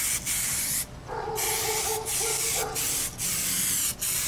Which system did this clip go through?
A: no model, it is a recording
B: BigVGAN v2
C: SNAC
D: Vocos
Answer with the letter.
A